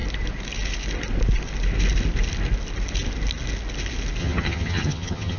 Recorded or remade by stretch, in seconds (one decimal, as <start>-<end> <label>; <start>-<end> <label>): 0.0-4.2 recorded; 4.2-5.4 remade